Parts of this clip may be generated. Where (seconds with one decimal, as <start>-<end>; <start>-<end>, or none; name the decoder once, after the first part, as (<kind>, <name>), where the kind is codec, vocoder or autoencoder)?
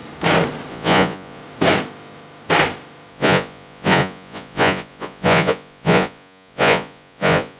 0.7-1.4 (vocoder, Vocos); 3.1-7.6